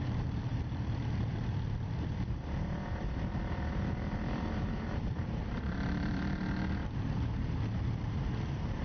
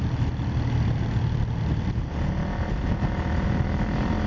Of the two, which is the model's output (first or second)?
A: first